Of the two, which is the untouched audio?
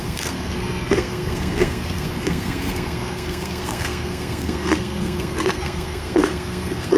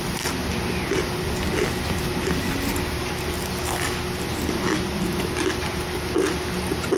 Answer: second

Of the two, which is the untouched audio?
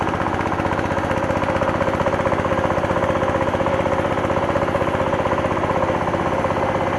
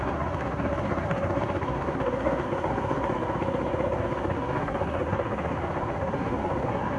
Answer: first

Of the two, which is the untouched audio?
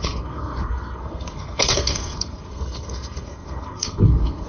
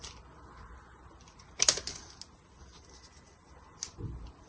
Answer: second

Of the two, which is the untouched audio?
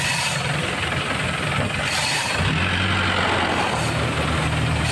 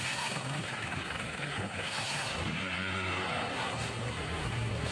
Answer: first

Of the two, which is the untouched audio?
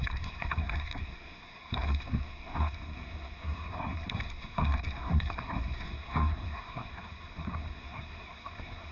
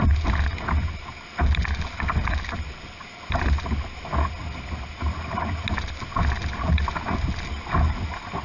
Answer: second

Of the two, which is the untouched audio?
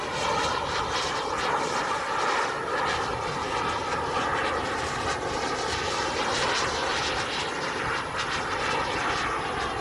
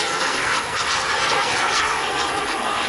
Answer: first